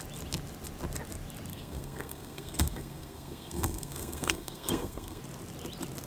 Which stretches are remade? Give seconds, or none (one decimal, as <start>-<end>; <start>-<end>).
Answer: 1.5-5.2